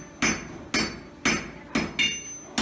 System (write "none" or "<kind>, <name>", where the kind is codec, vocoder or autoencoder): none